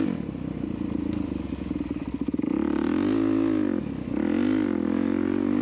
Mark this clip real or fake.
real